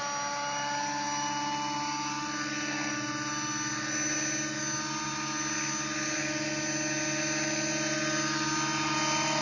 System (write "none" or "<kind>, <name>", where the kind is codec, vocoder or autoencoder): none